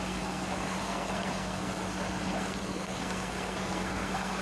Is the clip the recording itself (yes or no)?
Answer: no